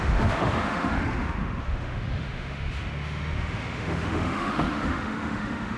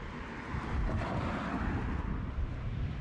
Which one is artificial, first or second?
first